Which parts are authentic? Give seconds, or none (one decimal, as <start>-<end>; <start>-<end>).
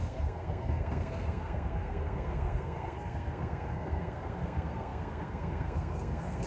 none